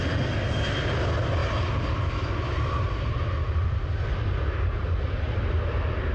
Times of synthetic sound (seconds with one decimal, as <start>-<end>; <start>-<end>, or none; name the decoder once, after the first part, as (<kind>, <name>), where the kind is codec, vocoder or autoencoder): none